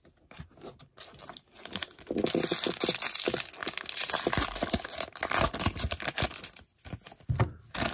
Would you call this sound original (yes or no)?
yes